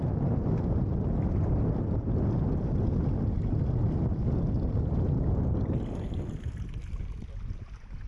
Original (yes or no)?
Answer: yes